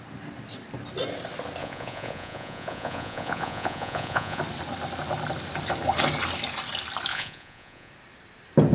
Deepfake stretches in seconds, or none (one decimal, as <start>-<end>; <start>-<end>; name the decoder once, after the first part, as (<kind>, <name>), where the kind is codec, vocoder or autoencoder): 1.6-4.4 (vocoder, Vocos); 7.1-7.9